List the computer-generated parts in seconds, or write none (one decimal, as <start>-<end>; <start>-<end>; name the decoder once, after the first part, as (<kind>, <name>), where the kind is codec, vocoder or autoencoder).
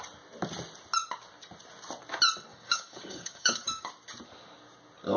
2.5-3.9 (codec, DAC)